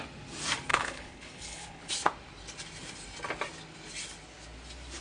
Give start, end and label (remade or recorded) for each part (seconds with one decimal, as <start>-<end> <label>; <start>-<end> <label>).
0.0-0.7 recorded; 0.7-1.9 remade; 1.9-5.0 recorded